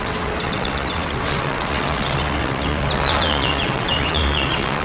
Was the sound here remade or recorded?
remade